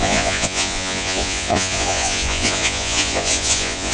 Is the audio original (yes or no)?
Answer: no